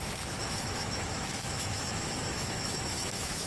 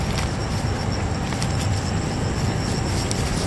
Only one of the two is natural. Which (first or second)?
second